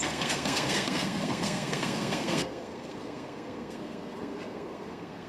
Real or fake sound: fake